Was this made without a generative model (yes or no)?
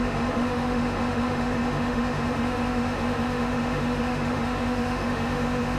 no